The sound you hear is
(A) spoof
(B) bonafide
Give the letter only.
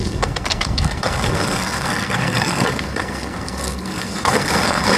A